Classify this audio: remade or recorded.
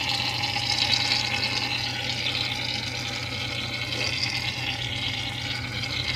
recorded